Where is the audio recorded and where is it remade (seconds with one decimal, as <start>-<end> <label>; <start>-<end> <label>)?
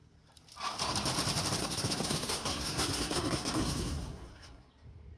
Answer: 0.0-1.6 recorded; 1.6-4.7 remade; 4.7-5.2 recorded